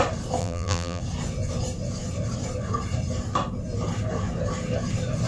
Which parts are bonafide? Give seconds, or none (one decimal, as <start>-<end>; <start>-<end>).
0.0-0.4; 1.0-5.3